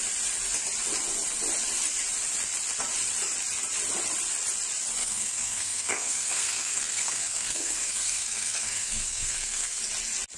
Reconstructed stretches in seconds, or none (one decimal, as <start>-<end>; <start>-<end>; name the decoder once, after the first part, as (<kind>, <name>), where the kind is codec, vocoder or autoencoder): 5.0-9.8 (codec, SNAC)